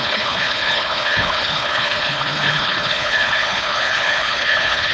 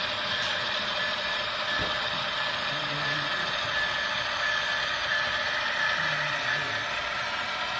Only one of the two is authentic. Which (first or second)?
second